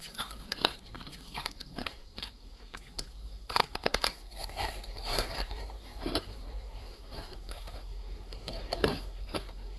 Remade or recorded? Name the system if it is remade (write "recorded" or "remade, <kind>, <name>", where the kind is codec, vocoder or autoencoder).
remade, codec, SNAC